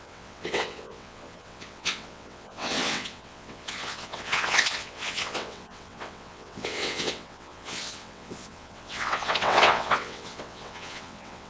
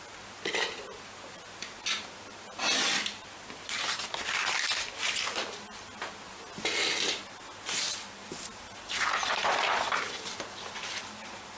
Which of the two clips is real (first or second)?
second